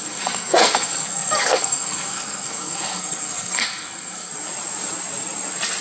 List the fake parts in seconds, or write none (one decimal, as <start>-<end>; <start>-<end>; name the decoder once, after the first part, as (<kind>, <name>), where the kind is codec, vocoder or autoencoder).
0.0-4.3 (codec, SNAC)